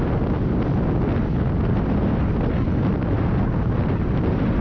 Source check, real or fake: real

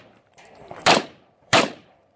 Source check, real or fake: fake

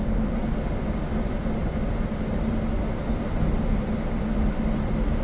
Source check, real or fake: real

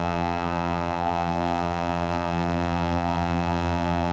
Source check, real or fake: fake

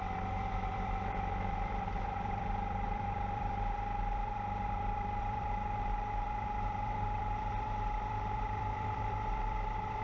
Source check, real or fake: fake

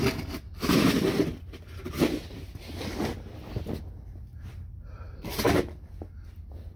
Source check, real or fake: real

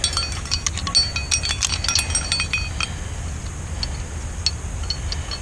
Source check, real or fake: real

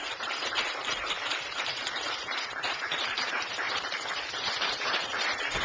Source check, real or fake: fake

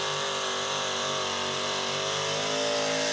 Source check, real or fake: real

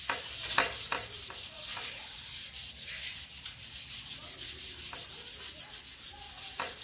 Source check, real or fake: real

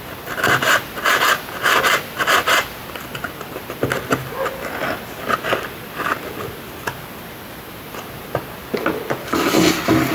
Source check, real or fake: real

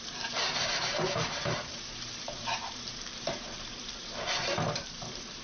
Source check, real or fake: fake